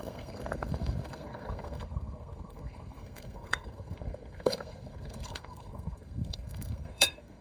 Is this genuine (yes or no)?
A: no